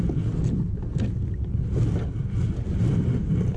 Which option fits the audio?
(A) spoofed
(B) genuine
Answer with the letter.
B